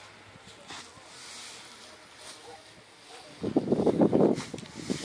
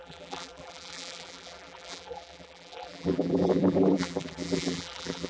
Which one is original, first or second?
first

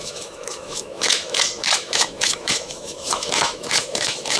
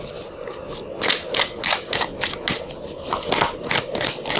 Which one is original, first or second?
second